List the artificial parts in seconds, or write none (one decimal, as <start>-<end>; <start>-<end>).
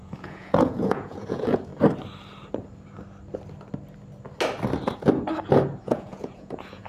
0.0-1.7; 5.8-6.9